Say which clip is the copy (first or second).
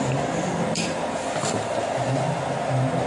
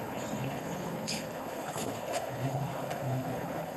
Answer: second